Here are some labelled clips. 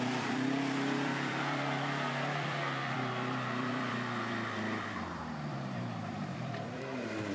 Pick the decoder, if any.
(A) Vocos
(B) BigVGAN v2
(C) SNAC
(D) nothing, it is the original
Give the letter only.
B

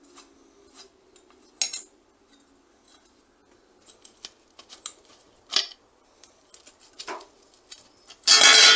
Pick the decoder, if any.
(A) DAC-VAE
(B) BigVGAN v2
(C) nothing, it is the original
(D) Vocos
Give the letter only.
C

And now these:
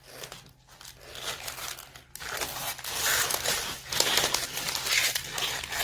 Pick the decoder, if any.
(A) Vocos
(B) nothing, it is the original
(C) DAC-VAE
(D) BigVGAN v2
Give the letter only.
B